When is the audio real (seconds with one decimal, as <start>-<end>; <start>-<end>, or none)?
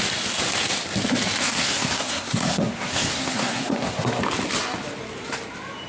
0.0-1.4; 4.2-5.9